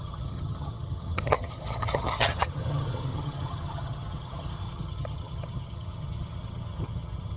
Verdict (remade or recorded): remade